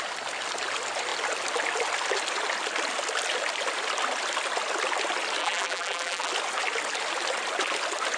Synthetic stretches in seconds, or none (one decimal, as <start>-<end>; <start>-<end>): 5.4-6.3